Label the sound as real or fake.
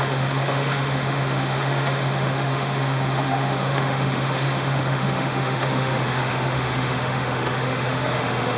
fake